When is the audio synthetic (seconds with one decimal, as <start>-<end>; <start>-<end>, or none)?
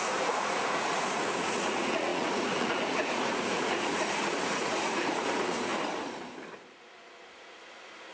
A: 0.0-5.7; 7.3-8.1